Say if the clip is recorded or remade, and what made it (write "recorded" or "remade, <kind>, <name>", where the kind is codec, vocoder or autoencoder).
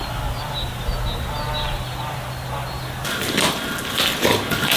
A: recorded